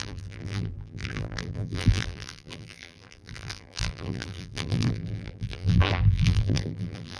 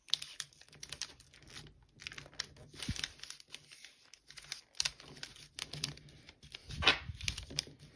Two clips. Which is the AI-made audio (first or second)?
first